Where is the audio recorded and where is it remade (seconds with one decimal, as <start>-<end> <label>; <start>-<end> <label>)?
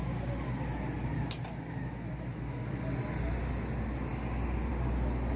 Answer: 0.0-5.4 recorded